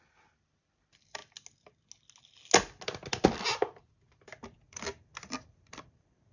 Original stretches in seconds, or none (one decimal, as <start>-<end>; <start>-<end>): 1.2-3.9